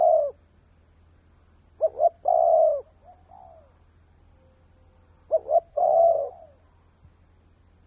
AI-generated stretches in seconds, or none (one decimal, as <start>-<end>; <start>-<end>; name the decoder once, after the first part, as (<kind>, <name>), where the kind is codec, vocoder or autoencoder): 5.7-6.3 (codec, SNAC)